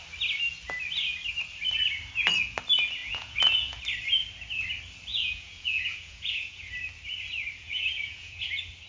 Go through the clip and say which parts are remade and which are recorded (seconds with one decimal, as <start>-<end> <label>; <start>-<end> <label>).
0.0-3.0 recorded; 3.0-3.8 remade; 3.8-5.1 recorded; 5.1-6.7 remade; 6.7-7.6 recorded; 7.6-8.5 remade; 8.5-8.9 recorded